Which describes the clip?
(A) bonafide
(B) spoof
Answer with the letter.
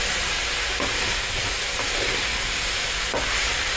A